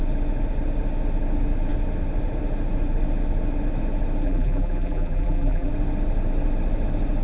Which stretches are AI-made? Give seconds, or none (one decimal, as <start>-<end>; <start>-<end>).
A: 4.2-5.7